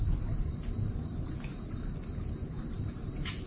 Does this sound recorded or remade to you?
recorded